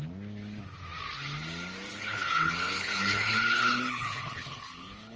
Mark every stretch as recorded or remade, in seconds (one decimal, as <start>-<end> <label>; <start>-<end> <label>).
0.0-1.9 recorded; 1.9-5.2 remade